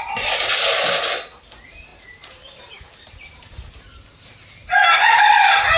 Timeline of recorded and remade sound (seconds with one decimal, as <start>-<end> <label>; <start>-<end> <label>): 0.0-1.9 recorded; 1.9-5.8 remade